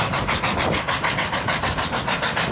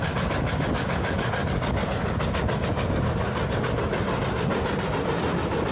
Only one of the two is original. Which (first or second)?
second